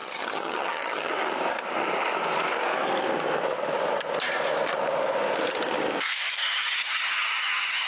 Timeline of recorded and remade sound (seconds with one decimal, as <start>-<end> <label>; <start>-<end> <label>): 0.0-1.1 remade; 1.1-6.4 recorded; 6.4-7.9 remade